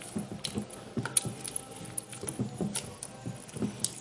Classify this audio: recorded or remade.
recorded